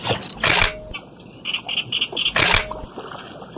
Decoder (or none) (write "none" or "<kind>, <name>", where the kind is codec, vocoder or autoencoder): none